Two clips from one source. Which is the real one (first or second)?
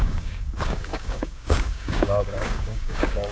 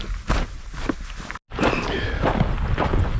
second